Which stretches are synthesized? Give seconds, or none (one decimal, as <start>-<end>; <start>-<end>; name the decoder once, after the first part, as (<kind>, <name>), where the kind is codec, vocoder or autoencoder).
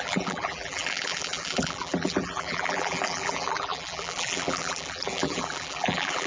0.0-6.3 (vocoder, BigVGAN v2)